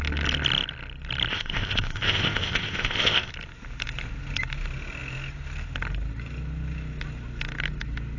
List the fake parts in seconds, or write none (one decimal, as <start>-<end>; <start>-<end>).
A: 1.3-3.3